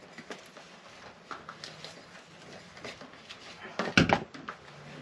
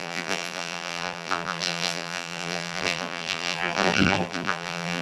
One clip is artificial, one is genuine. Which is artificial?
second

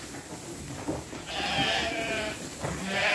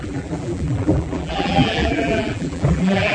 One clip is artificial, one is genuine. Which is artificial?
second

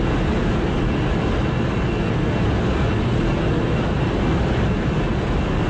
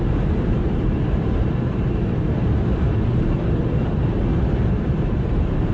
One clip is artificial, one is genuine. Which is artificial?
second